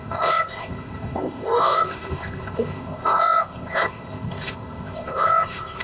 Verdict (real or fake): fake